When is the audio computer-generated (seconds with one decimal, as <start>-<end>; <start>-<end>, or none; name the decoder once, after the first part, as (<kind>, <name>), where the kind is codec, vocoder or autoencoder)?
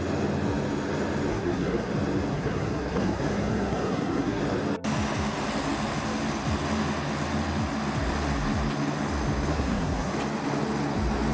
1.3-1.9 (codec, SNAC); 2.3-4.4; 9.5-10.1